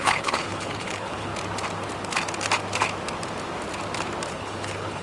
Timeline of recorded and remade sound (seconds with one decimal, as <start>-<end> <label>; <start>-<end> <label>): 0.0-1.3 remade; 1.3-4.3 recorded; 4.3-5.0 remade